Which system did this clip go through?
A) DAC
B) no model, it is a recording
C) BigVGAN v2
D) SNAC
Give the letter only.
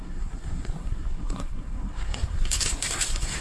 D